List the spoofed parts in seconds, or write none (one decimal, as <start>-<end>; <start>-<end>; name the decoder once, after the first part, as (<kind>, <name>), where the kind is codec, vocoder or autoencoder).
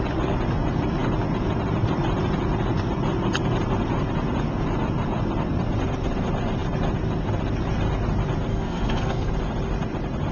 8.5-9.3 (codec, SNAC)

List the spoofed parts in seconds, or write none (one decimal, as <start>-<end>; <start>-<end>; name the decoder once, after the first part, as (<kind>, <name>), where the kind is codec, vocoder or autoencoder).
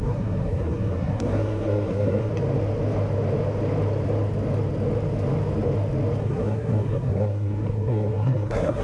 0.0-2.3 (codec, SNAC); 6.2-8.8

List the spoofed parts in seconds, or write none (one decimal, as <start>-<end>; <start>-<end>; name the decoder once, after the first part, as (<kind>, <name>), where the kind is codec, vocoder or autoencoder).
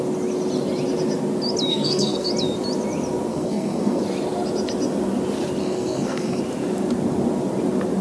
1.7-2.3 (codec, SNAC); 3.3-4.0; 5.6-6.4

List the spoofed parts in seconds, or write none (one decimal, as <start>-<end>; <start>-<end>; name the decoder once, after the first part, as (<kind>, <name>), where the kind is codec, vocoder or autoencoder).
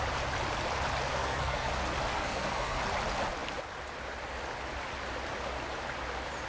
1.1-1.7 (codec, SNAC); 2.1-2.8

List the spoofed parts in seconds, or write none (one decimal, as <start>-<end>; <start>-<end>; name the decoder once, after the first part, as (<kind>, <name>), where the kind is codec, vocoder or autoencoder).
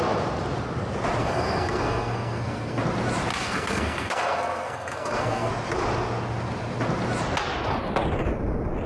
1.2-2.8 (codec, SNAC); 3.3-5.5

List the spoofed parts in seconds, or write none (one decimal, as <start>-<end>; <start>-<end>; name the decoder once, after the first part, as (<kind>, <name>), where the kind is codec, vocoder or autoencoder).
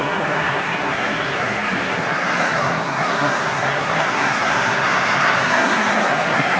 0.0-6.6 (codec, SNAC)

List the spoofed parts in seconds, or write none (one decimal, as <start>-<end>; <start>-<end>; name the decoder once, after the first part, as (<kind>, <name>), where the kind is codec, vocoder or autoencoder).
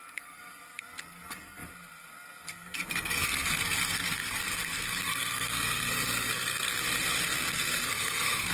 0.0-6.7 (codec, SNAC); 7.2-8.5